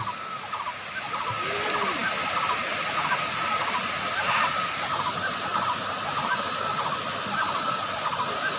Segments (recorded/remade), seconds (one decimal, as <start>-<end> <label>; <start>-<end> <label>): 0.0-8.6 recorded